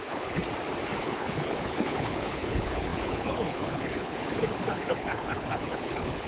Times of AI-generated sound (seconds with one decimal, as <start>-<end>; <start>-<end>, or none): 0.0-0.4; 1.0-6.3